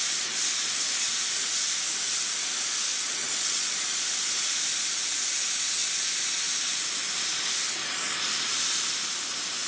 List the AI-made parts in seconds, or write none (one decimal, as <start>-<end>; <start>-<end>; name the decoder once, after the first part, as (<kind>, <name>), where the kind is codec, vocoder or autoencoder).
2.9-3.7 (vocoder, WaveNeXt)